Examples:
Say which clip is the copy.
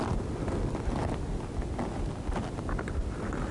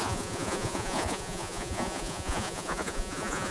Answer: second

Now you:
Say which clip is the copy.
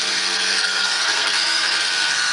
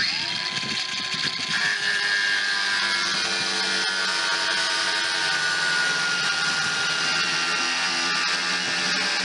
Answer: first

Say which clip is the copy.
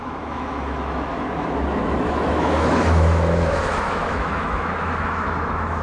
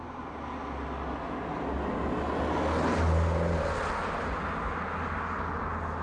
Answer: first